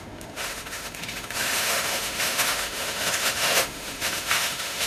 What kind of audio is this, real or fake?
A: fake